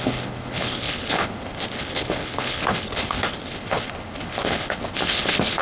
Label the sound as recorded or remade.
remade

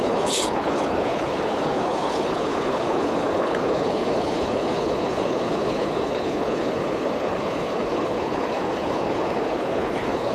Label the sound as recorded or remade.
remade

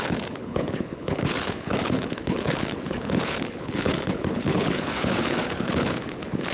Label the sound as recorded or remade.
remade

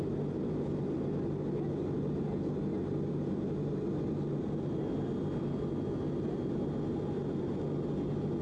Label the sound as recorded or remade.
recorded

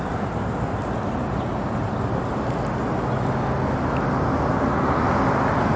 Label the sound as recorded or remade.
recorded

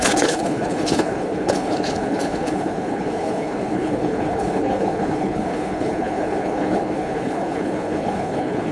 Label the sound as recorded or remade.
remade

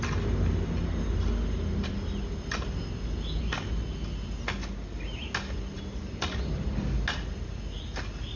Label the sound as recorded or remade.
recorded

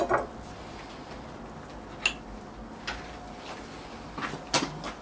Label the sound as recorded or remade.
recorded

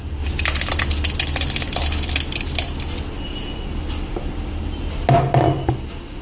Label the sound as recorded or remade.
recorded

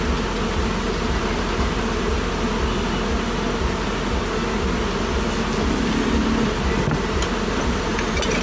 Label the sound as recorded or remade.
recorded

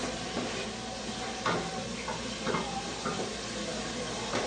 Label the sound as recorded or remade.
recorded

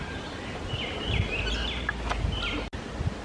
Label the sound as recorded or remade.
recorded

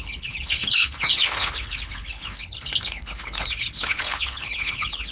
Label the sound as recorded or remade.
remade